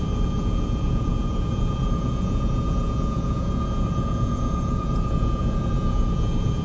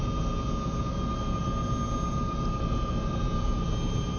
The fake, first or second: first